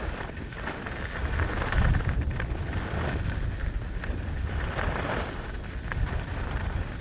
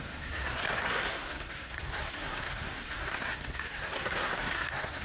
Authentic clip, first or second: first